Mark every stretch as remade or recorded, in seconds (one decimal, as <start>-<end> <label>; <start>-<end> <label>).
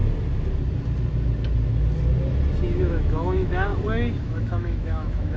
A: 0.0-2.8 recorded; 2.8-3.7 remade; 3.7-4.2 recorded; 4.2-5.4 remade